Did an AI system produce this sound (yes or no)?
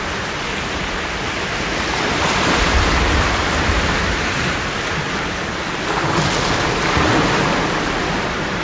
no